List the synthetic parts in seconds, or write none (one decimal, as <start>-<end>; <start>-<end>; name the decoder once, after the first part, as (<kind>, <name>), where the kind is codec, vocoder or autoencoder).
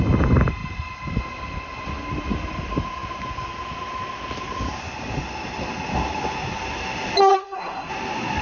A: 7.3-7.9 (codec, SNAC)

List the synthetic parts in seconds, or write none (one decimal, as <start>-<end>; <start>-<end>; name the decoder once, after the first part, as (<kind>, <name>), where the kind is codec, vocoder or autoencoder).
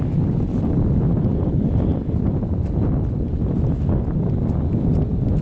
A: none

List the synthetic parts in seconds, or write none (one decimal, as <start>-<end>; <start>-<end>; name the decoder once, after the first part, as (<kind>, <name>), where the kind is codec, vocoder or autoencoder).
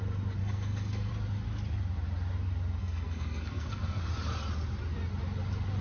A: 0.4-1.1 (codec, SNAC); 2.8-4.0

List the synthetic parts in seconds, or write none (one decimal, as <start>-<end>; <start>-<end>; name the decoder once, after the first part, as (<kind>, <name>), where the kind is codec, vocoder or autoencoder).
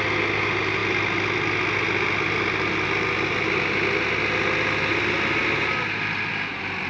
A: none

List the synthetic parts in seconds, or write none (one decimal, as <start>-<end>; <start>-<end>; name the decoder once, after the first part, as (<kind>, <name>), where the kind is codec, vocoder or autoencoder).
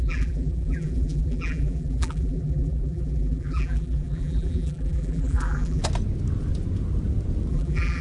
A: 0.0-5.8 (vocoder, BigVGAN v2); 7.5-8.0